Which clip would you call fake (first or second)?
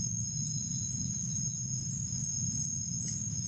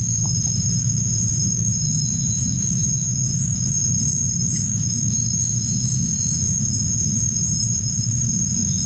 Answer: second